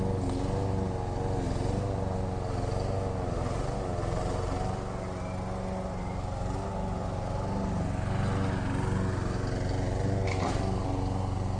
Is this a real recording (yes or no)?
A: yes